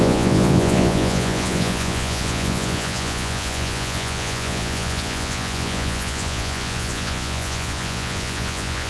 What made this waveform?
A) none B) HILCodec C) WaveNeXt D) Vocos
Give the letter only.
D